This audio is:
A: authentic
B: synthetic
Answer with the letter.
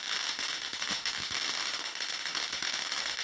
B